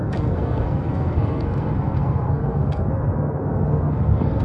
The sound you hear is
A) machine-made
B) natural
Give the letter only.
A